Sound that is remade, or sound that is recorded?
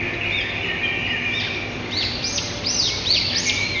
recorded